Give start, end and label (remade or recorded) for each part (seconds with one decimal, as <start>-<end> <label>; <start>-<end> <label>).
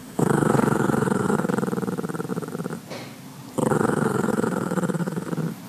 0.0-1.5 remade; 1.5-3.7 recorded; 3.7-5.3 remade; 5.3-5.7 recorded